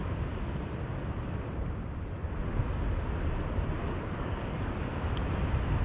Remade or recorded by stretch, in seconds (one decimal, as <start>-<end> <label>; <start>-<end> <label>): 0.0-3.8 recorded; 3.8-4.7 remade; 4.7-5.8 recorded